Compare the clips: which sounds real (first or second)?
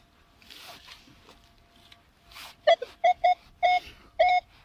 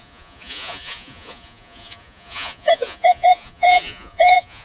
first